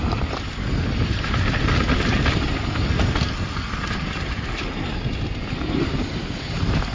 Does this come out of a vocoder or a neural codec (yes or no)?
no